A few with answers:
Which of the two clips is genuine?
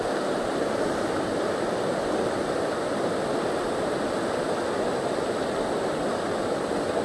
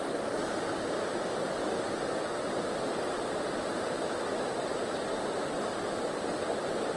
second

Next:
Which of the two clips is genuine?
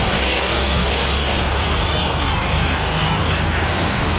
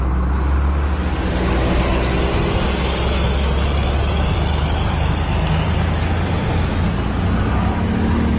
second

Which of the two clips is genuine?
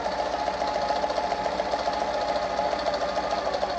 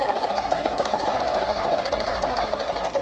first